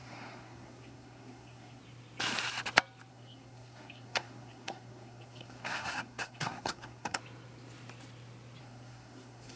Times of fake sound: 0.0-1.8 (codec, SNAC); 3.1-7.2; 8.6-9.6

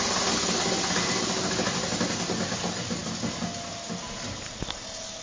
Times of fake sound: none

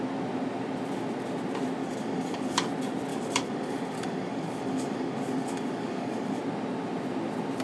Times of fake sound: 1.8-2.7 (codec, DAC); 3.1-6.4

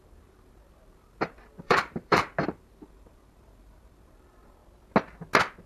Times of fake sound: 0.0-4.6 (vocoder, BigVGAN v2)

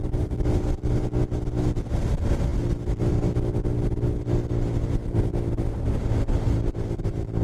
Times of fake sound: none

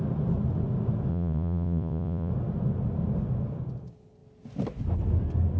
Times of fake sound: 1.1-2.3 (vocoder, Vocos)

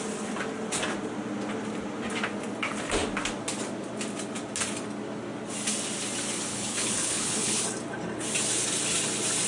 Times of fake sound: 6.5-7.6 (codec, HILCodec)

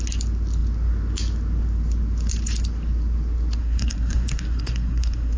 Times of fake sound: 3.6-5.4 (codec, SNAC)